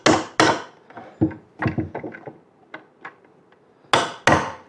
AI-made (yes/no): no